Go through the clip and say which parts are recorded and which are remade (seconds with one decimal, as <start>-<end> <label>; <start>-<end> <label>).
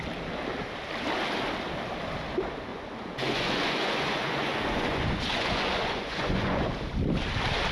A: 0.0-2.7 recorded; 2.7-6.7 remade; 6.7-7.7 recorded